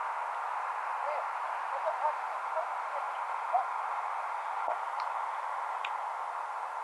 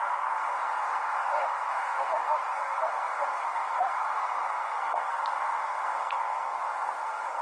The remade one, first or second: second